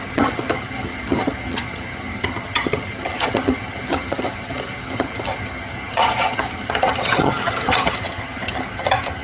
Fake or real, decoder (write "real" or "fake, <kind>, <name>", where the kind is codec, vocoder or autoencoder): fake, vocoder, HiFi-GAN